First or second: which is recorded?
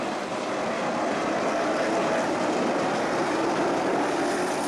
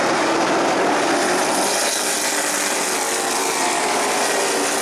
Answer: second